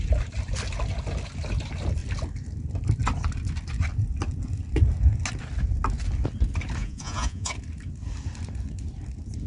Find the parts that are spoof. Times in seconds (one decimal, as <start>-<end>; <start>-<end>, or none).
6.8-7.5